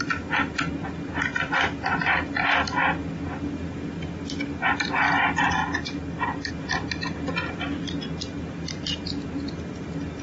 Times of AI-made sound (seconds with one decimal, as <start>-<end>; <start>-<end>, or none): none

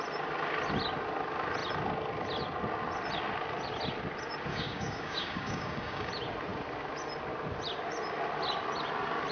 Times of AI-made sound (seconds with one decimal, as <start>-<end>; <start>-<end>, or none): 4.5-6.1

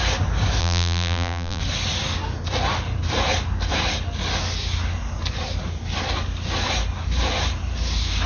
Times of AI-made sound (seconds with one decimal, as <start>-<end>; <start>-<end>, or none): 0.6-1.6